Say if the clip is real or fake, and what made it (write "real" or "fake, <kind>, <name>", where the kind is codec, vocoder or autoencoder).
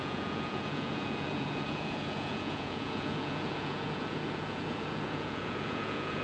fake, vocoder, Vocos